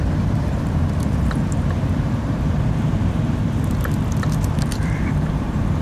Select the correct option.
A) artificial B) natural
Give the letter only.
A